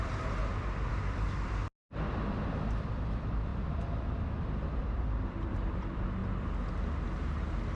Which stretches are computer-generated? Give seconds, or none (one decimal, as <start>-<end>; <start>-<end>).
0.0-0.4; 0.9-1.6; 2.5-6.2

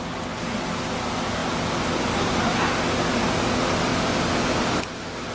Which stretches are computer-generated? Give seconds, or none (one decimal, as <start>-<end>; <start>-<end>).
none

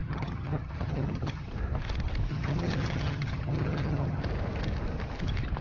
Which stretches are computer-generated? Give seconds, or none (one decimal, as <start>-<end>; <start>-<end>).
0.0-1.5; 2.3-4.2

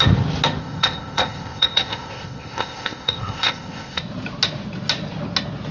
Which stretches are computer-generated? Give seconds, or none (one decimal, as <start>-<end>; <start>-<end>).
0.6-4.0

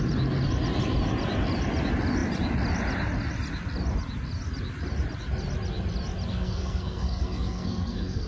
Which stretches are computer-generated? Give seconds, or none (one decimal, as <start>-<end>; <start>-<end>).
6.3-8.3

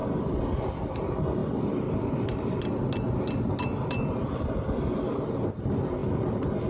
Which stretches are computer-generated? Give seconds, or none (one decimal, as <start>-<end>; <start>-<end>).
none